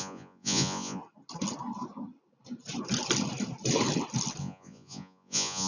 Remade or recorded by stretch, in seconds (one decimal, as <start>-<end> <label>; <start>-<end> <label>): 0.0-1.0 remade; 1.0-4.4 recorded; 4.4-5.7 remade